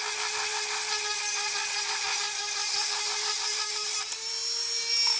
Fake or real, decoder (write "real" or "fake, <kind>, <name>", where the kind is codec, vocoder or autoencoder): real